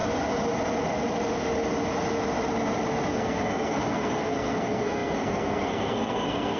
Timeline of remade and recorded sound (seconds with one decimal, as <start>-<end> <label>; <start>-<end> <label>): 0.0-3.1 recorded; 3.1-6.6 remade

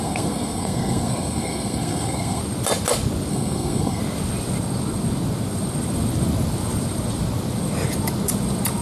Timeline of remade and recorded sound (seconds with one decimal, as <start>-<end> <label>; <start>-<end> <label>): 0.0-2.4 remade; 2.4-3.3 recorded; 3.3-4.0 remade; 4.0-8.8 recorded

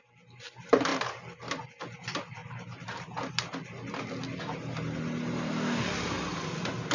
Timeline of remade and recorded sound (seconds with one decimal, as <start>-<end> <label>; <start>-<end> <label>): 0.0-0.9 recorded; 0.9-1.6 remade; 1.6-2.4 recorded; 2.4-3.3 remade; 3.3-6.9 recorded

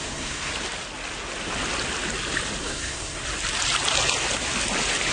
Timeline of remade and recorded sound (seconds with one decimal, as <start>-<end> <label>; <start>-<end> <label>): 0.0-0.5 remade; 0.5-2.6 recorded; 2.6-3.2 remade; 3.2-5.1 recorded